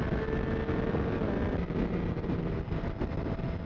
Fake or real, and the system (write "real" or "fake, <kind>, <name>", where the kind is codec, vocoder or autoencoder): real